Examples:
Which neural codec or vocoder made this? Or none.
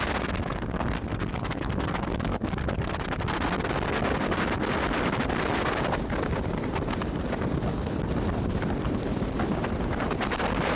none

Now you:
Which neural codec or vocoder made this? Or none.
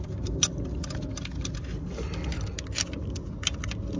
none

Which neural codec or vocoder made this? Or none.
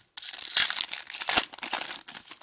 none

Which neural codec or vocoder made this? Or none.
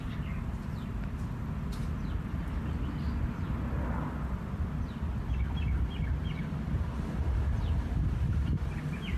none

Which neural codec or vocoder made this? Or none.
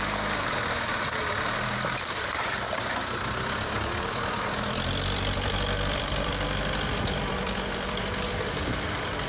vocoder, BigVGAN v2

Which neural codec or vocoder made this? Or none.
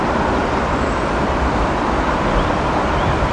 vocoder, BigVGAN v2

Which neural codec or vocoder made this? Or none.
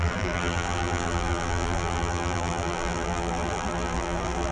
vocoder, BigVGAN v2